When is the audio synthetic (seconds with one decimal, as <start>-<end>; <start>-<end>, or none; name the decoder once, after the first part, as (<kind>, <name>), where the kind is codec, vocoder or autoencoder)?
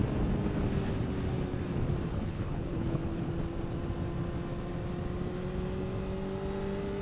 2.1-3.3 (codec, HILCodec)